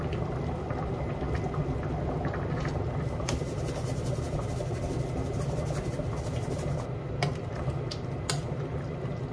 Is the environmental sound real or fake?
real